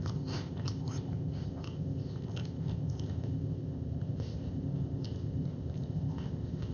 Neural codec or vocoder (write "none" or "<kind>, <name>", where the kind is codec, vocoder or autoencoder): codec, ZipCodec